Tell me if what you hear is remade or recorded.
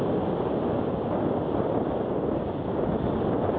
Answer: recorded